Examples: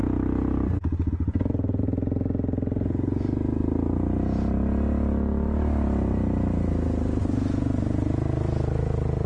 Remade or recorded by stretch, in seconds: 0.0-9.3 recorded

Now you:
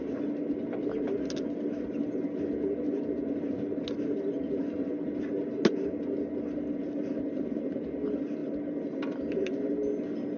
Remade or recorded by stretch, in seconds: 0.0-10.4 recorded

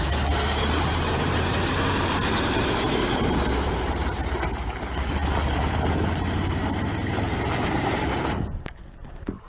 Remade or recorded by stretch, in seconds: 0.0-9.5 remade

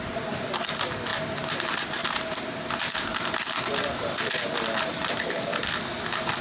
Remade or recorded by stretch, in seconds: 0.0-1.1 remade; 1.1-1.6 recorded; 1.6-3.1 remade; 3.1-6.4 recorded

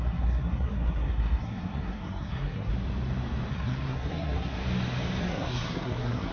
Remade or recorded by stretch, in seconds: 0.0-2.7 remade; 2.7-3.5 recorded; 3.5-4.6 remade; 4.6-5.2 recorded; 5.2-6.3 remade

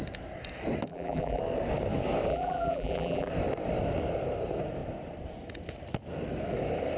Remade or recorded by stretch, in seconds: 0.0-0.9 recorded; 0.9-1.4 remade; 1.4-2.3 recorded; 2.3-3.3 remade; 3.3-7.0 recorded